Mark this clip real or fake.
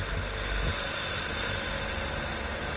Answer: real